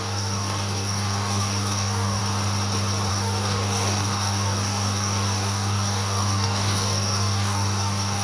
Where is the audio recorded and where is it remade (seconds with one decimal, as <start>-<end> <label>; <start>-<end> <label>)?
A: 0.0-2.2 remade; 2.2-3.1 recorded; 3.1-8.2 remade